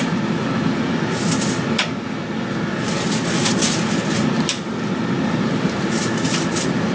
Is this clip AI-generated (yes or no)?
no